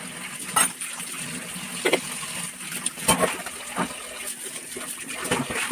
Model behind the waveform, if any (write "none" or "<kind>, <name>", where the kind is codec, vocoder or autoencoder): none